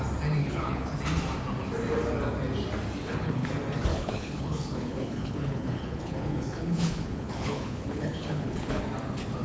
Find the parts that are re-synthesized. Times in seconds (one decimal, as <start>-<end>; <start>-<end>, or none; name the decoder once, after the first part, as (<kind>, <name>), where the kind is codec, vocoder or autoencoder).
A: 0.4-1.0 (codec, HILCodec); 3.0-3.5; 3.9-8.8